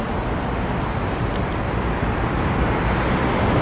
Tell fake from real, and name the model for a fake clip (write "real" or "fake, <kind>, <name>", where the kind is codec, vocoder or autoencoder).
real